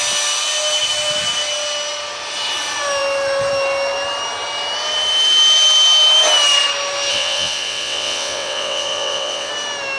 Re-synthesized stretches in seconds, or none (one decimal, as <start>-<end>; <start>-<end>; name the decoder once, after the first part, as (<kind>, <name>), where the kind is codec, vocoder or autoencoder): 7.1-9.5 (vocoder, WaveNeXt)